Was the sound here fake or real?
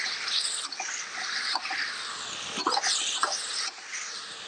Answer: fake